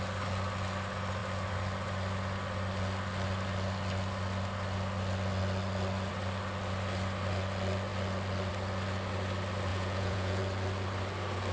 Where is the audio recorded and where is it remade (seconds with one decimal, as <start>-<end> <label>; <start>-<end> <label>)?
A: 0.0-9.7 recorded; 9.7-10.4 remade; 10.4-11.5 recorded